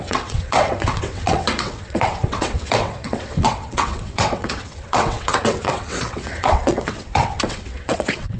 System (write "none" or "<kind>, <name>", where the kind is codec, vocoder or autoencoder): vocoder, WaveNeXt